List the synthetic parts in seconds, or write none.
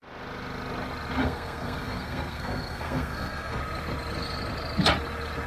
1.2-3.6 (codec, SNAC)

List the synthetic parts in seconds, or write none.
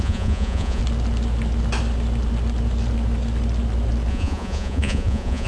0.0-0.8 (vocoder, Vocos); 4.1-5.5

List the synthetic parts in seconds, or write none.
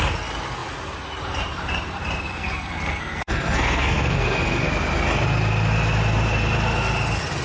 2.3-4.7 (codec, SNAC)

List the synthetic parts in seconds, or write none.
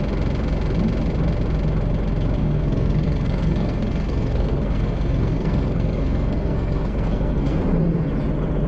2.4-7.6 (codec, SNAC)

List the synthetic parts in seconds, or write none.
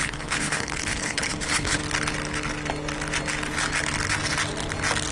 0.0-1.8 (codec, HILCodec)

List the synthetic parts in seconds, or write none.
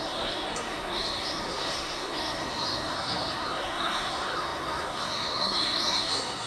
0.0-6.5 (codec, SNAC)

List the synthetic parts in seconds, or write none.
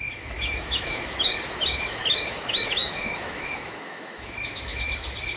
0.0-5.4 (autoencoder, DAC-VAE)